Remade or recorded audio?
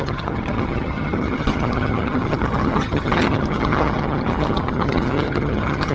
remade